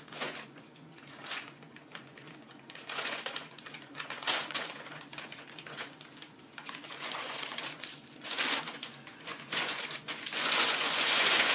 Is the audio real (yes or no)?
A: no